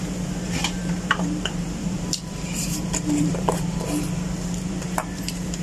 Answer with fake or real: fake